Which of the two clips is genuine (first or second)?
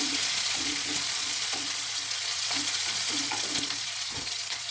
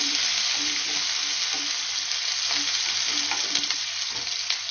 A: second